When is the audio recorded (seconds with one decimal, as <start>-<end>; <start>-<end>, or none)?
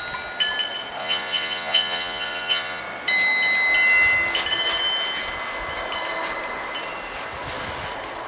0.0-1.0; 2.8-8.3